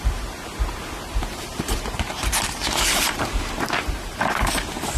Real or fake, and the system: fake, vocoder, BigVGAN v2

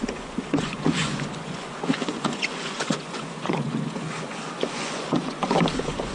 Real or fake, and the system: fake, vocoder, Vocos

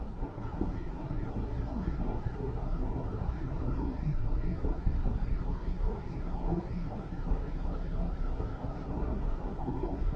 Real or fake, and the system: fake, codec, SNAC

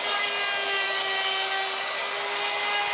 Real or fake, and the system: real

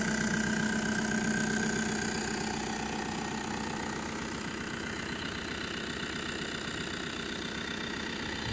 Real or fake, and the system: real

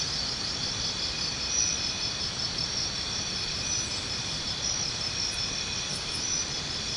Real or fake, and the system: real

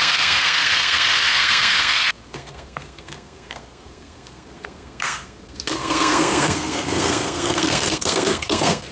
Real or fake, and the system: fake, codec, SNAC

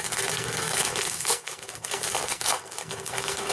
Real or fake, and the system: fake, codec, SNAC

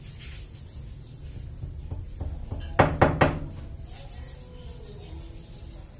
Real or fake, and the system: real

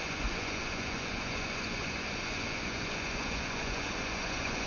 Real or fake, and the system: fake, vocoder, Vocos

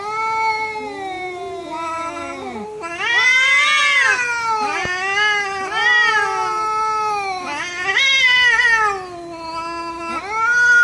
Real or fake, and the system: real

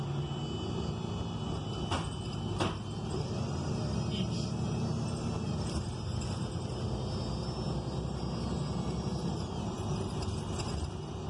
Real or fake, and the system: real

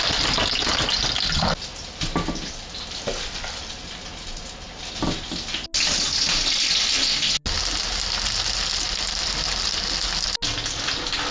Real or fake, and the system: real